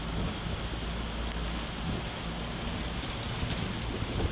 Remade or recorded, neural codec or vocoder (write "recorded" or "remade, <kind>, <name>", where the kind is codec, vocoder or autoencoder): recorded